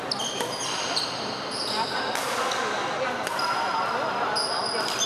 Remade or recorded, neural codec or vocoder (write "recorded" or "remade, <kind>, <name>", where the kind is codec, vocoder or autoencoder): recorded